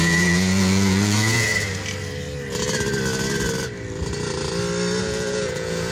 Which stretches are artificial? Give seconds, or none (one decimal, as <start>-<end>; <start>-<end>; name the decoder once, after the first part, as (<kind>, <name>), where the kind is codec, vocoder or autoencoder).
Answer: 0.0-1.5 (vocoder, Vocos); 5.0-5.9